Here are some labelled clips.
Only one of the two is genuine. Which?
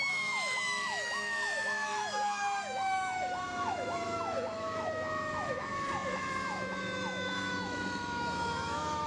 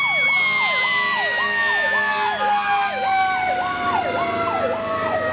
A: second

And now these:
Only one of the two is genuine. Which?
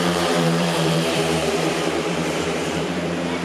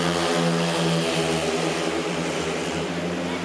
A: second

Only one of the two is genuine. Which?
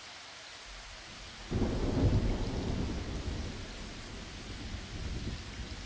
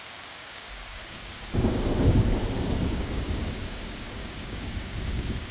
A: first